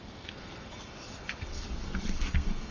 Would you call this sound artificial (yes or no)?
yes